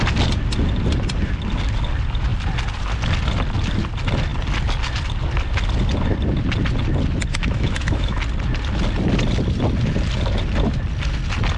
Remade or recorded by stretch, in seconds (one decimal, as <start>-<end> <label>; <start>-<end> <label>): 0.0-7.3 recorded; 7.3-8.2 remade; 8.2-11.6 recorded